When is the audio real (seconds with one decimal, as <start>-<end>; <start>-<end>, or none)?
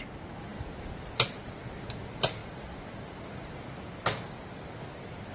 0.0-5.3